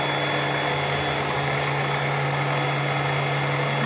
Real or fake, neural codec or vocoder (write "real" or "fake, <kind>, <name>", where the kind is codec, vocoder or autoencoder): real